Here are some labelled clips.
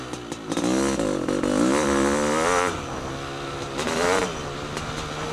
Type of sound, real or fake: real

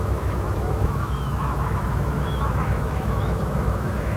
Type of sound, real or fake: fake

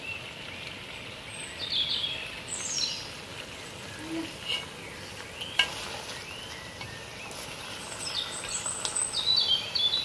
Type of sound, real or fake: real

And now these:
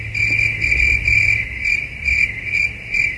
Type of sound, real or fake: real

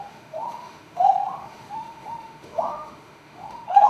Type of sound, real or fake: fake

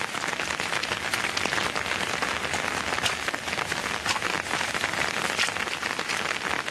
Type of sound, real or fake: real